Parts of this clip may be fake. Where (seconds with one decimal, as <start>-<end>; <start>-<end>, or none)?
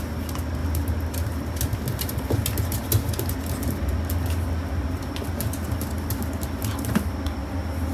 none